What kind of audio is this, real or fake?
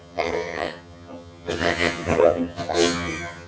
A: fake